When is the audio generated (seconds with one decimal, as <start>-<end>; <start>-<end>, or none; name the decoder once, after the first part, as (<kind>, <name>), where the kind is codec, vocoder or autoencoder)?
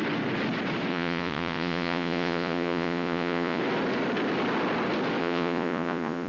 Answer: 0.9-3.6 (vocoder, Vocos); 5.2-6.3